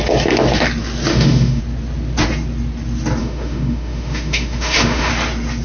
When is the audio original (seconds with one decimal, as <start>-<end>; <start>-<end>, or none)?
0.0-1.1; 1.6-3.2; 5.1-5.6